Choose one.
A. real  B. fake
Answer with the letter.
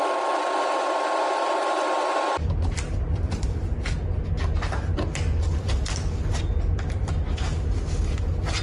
A